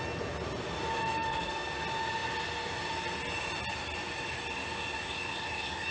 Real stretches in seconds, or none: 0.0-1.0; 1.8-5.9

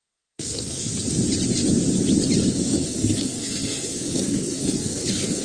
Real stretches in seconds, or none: 0.9-2.5

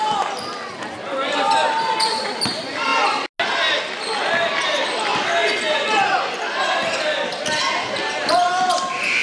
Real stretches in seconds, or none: 0.0-9.2

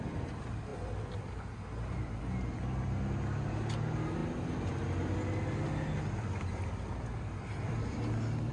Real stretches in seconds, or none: 0.0-8.5

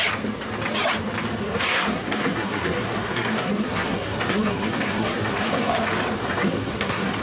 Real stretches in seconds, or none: 0.0-1.4; 5.7-6.2